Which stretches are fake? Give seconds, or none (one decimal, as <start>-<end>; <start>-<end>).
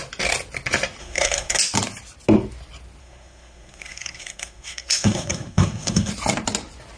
1.0-1.6; 3.0-6.1